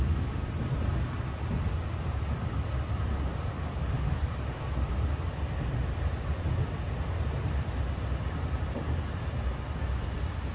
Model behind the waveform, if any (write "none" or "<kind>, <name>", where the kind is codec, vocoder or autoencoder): none